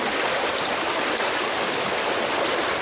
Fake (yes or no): no